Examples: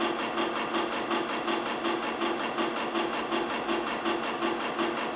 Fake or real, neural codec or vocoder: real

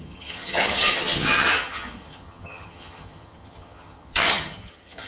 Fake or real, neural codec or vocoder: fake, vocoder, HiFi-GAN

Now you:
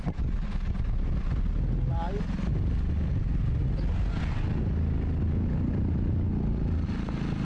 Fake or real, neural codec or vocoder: real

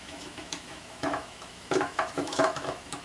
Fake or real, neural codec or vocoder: fake, autoencoder, DAC-VAE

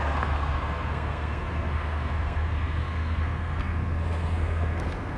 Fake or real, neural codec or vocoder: fake, codec, SNAC